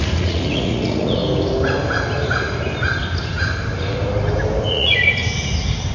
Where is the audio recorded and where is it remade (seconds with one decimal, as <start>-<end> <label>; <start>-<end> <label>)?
0.0-1.2 remade; 1.2-4.7 recorded; 4.7-5.2 remade; 5.2-5.9 recorded